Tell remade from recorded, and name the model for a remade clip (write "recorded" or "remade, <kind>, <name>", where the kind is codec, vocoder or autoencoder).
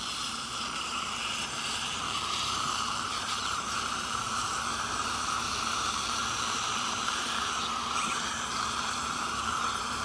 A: remade, vocoder, BigVGAN v2